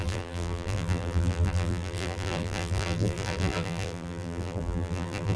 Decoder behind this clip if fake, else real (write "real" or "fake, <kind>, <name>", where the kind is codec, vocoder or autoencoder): fake, vocoder, BigVGAN v2